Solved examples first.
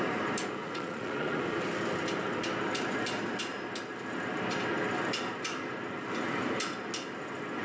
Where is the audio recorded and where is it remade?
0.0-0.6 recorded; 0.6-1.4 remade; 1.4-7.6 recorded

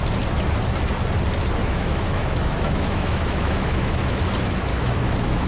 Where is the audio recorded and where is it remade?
0.0-1.6 recorded; 1.6-4.3 remade; 4.3-4.7 recorded; 4.7-5.5 remade